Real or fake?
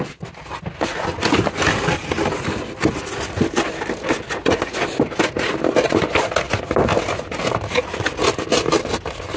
real